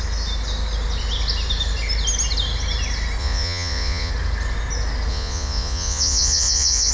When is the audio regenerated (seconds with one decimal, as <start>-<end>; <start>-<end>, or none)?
3.2-4.1; 5.1-6.9